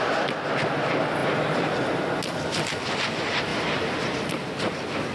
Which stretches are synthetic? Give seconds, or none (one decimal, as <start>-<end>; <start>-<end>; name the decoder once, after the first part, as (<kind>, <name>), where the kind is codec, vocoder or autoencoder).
1.2-1.8 (vocoder, BigVGAN v2); 3.5-4.3